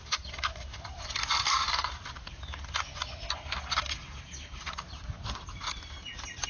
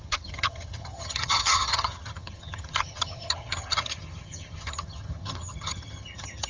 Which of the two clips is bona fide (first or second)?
first